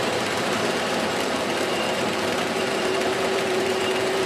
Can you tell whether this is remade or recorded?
remade